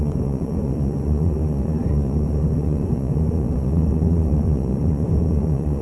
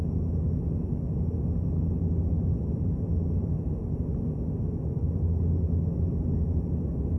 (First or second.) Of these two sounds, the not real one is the first